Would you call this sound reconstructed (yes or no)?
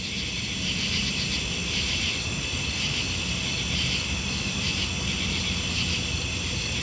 yes